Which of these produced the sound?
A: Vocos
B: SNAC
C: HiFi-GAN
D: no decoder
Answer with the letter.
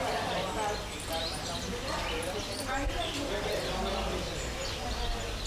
D